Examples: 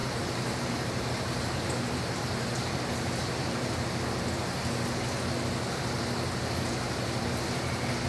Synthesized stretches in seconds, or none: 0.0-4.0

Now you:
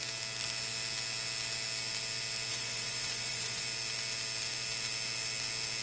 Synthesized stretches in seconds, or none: 2.5-3.6

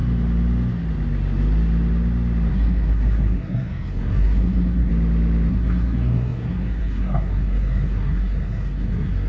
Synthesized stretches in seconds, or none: 2.5-4.9; 5.5-9.3

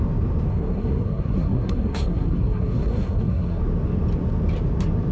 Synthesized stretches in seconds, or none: 0.5-3.6

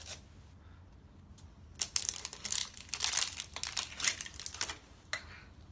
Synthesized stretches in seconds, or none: none

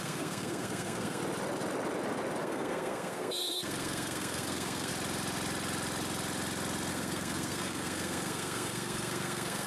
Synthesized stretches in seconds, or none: 0.0-1.2; 2.4-4.9; 6.9-9.7

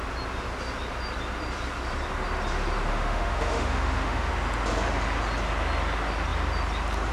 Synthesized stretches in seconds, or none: 2.9-4.3